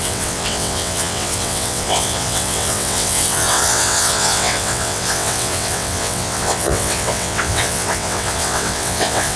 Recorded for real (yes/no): no